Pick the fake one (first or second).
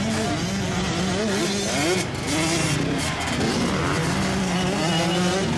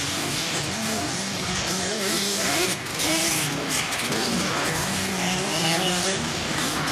second